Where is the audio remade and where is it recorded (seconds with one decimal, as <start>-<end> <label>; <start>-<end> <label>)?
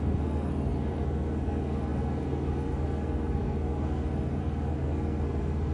0.0-5.7 remade